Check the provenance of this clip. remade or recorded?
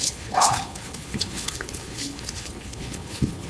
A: remade